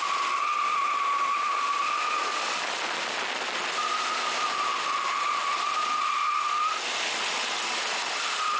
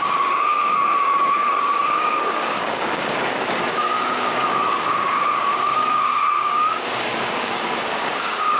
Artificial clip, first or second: second